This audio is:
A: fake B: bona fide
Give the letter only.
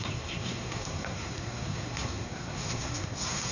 A